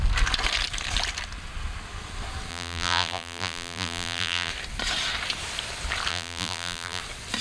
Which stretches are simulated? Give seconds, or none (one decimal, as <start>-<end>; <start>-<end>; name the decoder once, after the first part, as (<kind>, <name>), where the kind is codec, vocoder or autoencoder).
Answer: 2.5-4.5 (vocoder, BigVGAN v2); 6.1-7.0

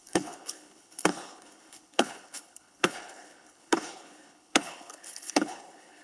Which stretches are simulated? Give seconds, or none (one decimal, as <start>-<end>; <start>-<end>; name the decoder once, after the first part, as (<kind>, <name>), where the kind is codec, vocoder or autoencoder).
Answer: 0.0-6.0 (codec, HILCodec)